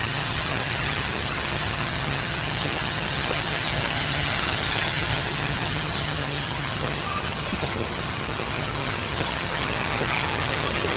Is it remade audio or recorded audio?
remade